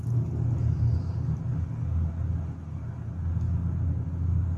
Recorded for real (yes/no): yes